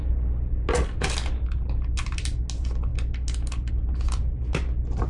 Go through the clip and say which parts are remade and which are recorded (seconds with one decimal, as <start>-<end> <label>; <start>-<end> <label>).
0.0-5.1 recorded

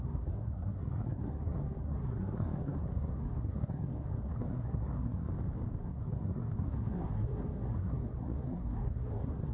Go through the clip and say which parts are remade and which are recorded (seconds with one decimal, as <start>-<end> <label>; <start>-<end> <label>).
0.0-5.3 remade; 5.3-5.8 recorded; 5.8-9.5 remade

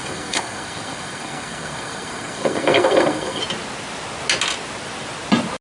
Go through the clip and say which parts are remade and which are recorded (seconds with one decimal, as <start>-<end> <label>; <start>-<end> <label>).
0.0-3.4 remade; 3.4-5.6 recorded